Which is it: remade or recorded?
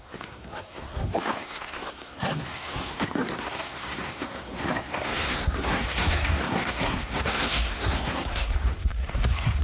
remade